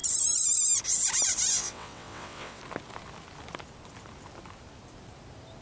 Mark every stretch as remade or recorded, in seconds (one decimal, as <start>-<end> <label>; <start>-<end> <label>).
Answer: 0.0-1.5 recorded; 1.5-2.6 remade; 2.6-5.6 recorded